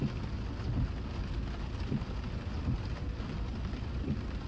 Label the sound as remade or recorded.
recorded